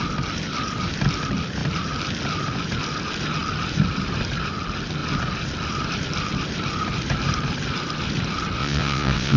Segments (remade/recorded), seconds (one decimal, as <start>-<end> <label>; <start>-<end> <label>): 0.0-8.6 recorded; 8.6-9.4 remade